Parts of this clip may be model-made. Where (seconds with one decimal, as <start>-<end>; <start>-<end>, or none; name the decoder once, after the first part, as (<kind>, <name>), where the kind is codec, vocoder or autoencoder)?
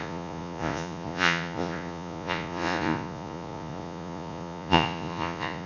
0.0-5.7 (vocoder, Vocos)